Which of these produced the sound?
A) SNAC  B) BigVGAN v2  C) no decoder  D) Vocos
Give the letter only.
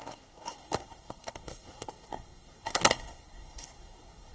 A